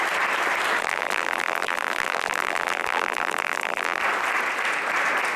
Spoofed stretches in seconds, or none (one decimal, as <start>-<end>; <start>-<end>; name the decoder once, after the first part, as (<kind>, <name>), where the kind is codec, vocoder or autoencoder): 0.8-4.0 (vocoder, BigVGAN v2)